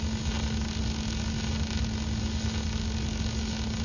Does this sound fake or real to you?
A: real